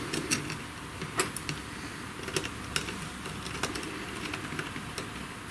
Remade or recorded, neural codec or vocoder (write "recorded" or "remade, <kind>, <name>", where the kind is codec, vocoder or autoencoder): recorded